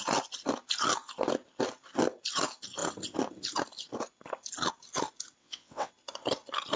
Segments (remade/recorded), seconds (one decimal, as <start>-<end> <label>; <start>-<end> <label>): 0.0-5.4 recorded; 5.4-5.9 remade; 5.9-6.8 recorded